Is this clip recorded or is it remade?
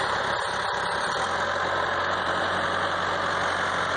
recorded